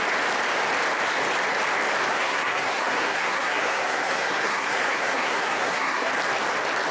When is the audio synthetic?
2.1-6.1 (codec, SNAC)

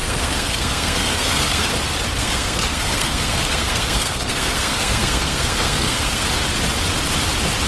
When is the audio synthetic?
0.0-1.7 (codec, SNAC); 2.2-6.2

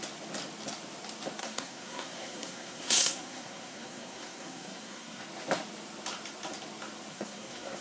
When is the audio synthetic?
1.4-5.2 (codec, SNAC); 7.1-7.8

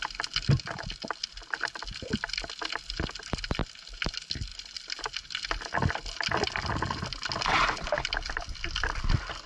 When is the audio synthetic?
none

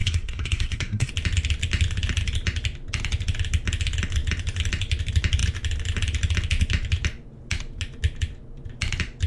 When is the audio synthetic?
0.0-1.1 (codec, SNAC)

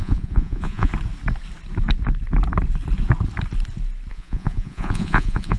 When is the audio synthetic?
0.0-0.9 (vocoder, Vocos); 4.1-5.6